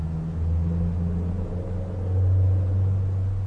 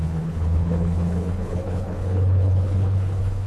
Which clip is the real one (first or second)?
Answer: first